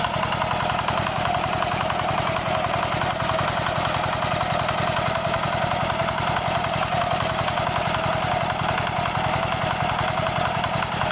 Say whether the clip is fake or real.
real